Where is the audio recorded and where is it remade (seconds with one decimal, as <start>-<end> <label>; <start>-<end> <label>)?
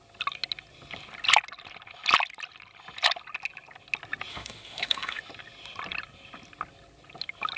0.0-4.3 recorded; 4.3-5.2 remade; 5.2-7.6 recorded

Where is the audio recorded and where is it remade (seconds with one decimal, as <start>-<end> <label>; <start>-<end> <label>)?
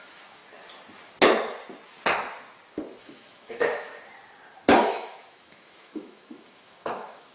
0.0-0.4 remade; 0.4-3.0 recorded; 3.0-3.9 remade; 3.9-4.9 recorded; 4.9-7.3 remade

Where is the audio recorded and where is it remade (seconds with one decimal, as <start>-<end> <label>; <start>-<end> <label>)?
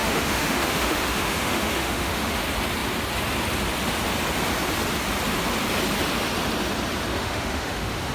0.0-2.4 remade; 2.4-7.1 recorded; 7.1-8.1 remade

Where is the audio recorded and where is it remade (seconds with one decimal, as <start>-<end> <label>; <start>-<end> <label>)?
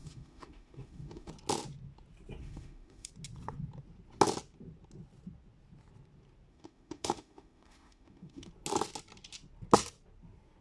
0.0-1.3 remade; 1.3-2.4 recorded; 2.4-3.1 remade; 3.1-6.5 recorded; 6.5-8.5 remade; 8.5-10.6 recorded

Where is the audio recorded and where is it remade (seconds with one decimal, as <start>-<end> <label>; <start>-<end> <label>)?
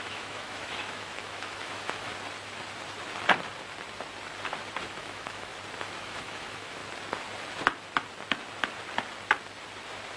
0.0-2.1 remade; 2.1-4.9 recorded; 4.9-5.5 remade; 5.5-6.0 recorded; 6.0-6.8 remade; 6.8-10.2 recorded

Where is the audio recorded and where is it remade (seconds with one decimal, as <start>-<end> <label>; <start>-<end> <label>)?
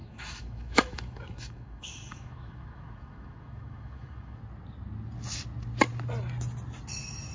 0.0-4.4 remade; 4.4-7.3 recorded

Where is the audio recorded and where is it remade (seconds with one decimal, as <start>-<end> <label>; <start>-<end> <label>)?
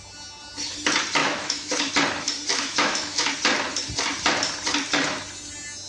0.0-1.2 recorded; 1.2-1.9 remade; 1.9-2.5 recorded; 2.5-3.3 remade; 3.3-5.9 recorded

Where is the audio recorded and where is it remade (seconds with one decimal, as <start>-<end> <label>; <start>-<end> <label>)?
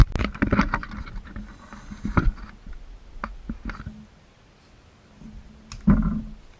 0.0-6.6 recorded